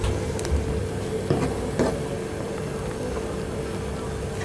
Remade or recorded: recorded